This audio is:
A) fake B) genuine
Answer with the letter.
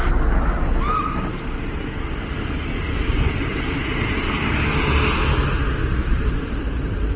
B